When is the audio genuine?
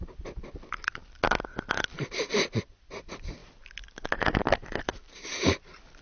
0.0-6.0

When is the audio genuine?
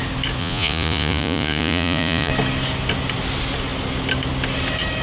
0.0-0.4; 2.3-5.0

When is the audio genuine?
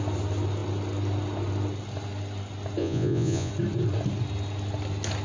0.0-2.8; 3.5-5.2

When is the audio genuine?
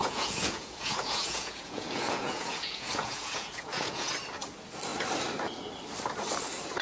4.1-6.8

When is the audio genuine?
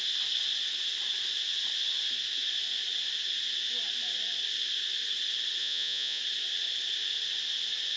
0.0-5.6; 6.2-8.0